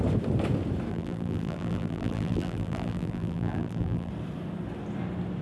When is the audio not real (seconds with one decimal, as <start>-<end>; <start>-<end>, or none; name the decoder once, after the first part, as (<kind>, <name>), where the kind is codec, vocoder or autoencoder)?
0.9-4.1 (vocoder, BigVGAN v2)